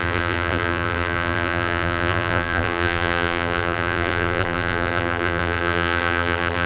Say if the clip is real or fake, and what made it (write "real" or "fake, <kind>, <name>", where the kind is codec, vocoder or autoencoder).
fake, vocoder, BigVGAN v2